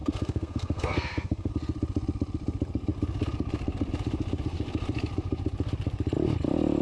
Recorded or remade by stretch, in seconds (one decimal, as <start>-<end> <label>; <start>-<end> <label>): 0.0-1.5 remade; 1.5-6.8 recorded